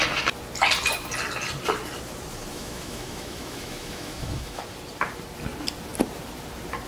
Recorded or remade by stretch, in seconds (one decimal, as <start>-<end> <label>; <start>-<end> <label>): 0.0-2.5 recorded; 2.5-4.6 remade; 4.6-6.9 recorded